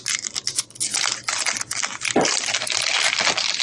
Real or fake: fake